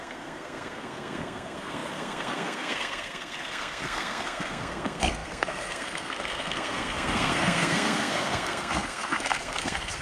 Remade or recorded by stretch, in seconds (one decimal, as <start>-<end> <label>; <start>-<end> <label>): 0.0-10.0 remade